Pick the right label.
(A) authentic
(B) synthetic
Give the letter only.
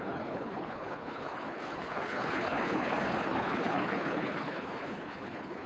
B